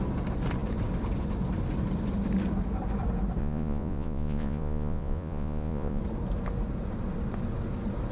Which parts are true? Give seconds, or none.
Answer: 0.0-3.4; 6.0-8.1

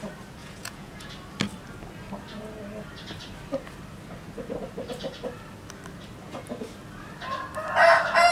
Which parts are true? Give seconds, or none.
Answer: 0.0-0.4; 1.1-8.3

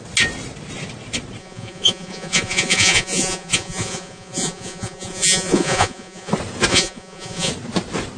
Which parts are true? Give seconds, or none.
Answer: 0.0-1.4; 6.3-6.7; 7.5-8.2

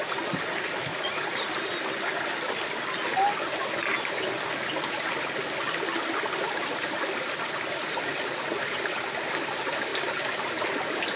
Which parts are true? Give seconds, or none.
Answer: 0.0-0.9; 1.5-11.2